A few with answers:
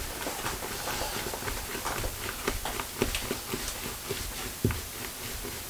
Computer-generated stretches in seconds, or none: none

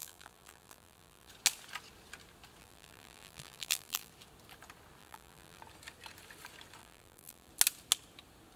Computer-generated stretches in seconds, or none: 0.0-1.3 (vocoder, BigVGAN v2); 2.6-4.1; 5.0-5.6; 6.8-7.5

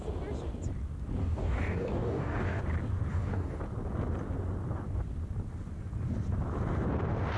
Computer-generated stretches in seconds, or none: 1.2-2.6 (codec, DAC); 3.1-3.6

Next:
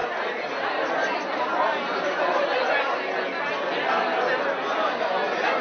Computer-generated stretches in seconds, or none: none

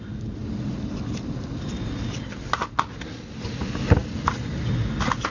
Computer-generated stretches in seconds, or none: none

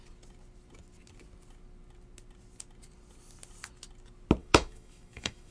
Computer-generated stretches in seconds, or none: 4.4-5.5 (autoencoder, DAC-VAE)

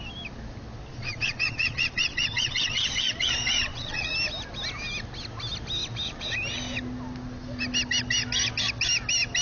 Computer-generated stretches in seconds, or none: 0.9-4.1 (vocoder, Vocos)

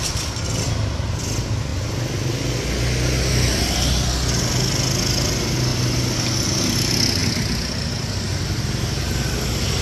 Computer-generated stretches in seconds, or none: none